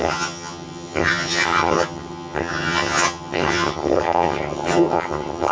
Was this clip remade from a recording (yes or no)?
yes